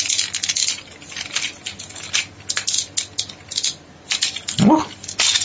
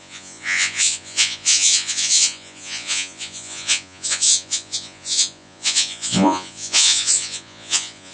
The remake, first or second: second